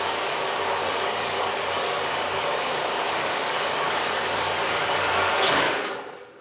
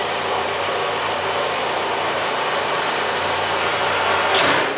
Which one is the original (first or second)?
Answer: second